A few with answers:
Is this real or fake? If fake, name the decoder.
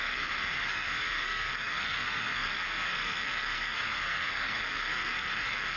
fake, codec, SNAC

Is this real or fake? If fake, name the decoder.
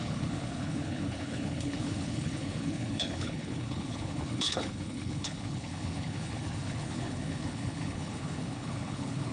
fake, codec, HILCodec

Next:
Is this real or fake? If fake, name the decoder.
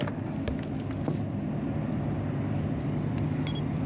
real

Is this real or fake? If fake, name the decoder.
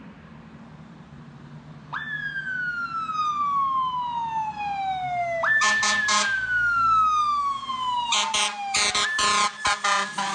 real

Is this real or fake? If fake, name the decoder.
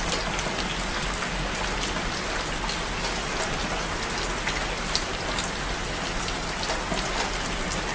real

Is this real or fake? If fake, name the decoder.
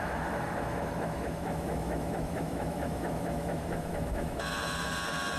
fake, autoencoder, DAC-VAE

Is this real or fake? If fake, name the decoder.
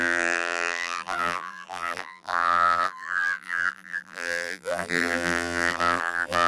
fake, vocoder, BigVGAN v2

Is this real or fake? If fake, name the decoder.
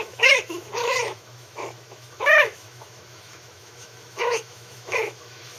fake, autoencoder, DAC-VAE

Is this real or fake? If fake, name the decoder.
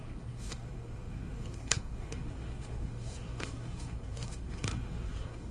fake, codec, SNAC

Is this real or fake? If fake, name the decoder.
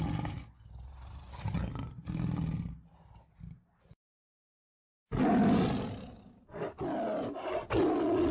real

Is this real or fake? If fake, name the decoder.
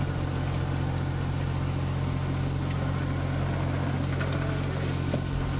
real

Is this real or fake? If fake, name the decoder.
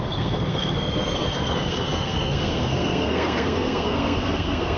fake, codec, SNAC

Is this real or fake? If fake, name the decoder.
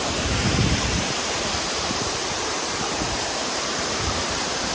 fake, vocoder, BigVGAN v2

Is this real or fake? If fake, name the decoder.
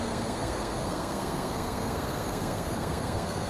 fake, codec, SNAC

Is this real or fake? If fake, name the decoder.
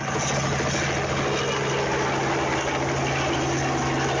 real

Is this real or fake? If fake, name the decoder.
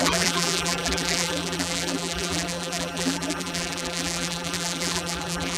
fake, vocoder, BigVGAN v2